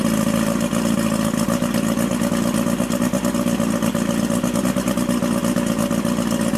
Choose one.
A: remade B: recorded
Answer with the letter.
B